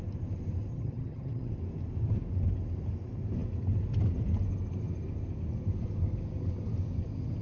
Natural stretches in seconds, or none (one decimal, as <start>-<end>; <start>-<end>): 0.0-0.7; 1.5-7.4